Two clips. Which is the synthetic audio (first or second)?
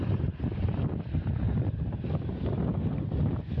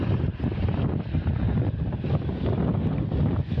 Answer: first